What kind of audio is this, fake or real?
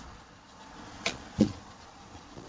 fake